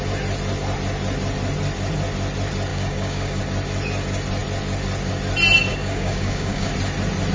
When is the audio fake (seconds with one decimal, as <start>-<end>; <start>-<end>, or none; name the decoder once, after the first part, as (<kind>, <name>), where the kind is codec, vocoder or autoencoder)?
2.7-3.4 (codec, DAC); 5.7-6.7